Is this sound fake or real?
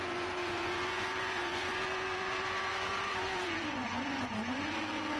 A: fake